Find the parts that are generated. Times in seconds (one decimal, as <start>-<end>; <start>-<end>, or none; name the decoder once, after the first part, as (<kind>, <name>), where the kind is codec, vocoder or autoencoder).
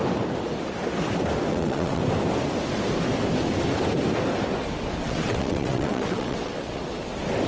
1.5-2.0 (vocoder, WaveNeXt); 5.0-6.8